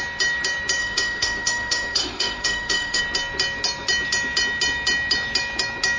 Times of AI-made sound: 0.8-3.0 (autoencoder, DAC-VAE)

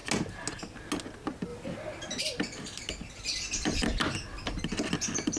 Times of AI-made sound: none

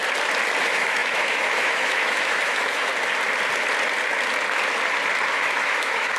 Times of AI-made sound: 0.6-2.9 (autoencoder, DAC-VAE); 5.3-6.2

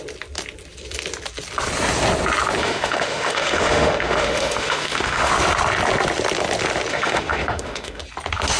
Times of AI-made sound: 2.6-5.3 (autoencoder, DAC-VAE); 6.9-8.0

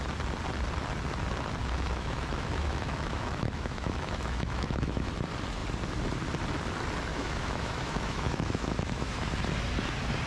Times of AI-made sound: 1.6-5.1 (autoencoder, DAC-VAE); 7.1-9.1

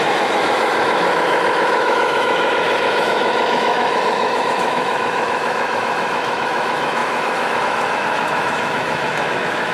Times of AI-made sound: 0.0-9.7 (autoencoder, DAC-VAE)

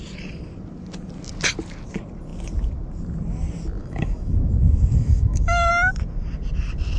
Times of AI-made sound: 3.8-5.7 (autoencoder, DAC-VAE)